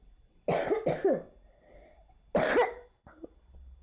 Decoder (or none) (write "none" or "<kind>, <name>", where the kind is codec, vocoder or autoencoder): none